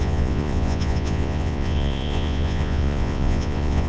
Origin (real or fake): fake